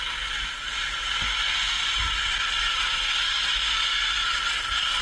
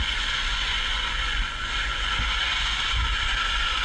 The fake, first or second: second